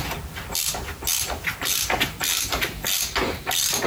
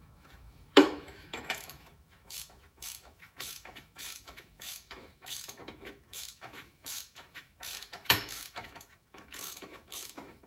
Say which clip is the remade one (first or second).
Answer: second